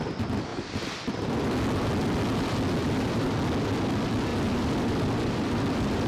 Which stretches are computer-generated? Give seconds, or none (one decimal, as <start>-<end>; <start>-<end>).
0.5-1.4; 2.8-3.4; 4.3-6.1